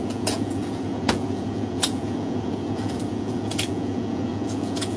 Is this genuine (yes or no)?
no